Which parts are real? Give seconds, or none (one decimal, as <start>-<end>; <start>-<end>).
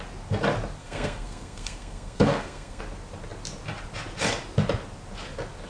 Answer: 0.0-0.8; 2.8-5.7